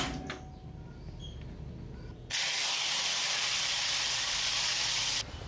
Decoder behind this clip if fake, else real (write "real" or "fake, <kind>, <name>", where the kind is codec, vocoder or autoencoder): real